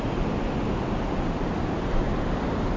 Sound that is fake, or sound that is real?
real